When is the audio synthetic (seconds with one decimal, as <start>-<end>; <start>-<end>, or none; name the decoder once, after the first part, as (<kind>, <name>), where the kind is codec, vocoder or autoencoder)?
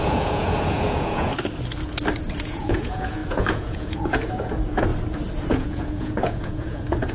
0.0-1.3 (vocoder, Vocos); 2.2-4.9; 5.5-7.1